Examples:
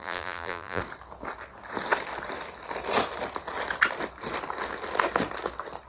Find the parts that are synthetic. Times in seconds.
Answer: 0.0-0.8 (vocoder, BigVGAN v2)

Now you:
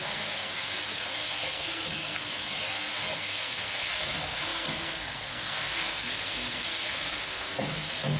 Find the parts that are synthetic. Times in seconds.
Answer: 0.0-8.2 (codec, SNAC)